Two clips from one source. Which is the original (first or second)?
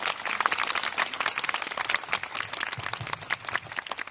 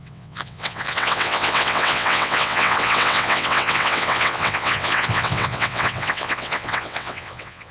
first